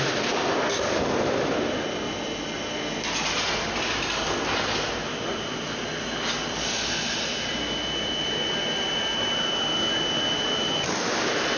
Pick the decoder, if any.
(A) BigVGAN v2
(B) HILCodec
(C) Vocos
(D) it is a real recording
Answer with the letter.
D